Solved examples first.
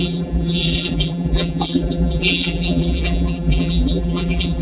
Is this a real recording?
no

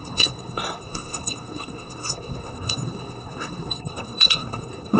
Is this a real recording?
no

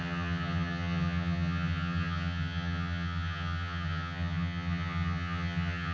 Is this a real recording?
no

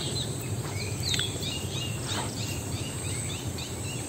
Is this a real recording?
no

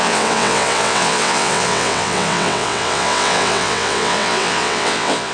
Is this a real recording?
no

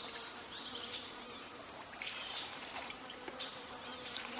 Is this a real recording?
no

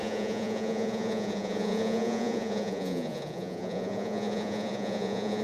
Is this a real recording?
no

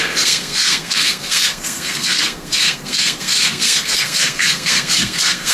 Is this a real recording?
no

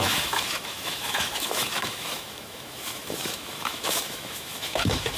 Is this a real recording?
no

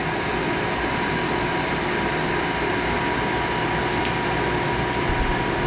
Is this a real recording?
no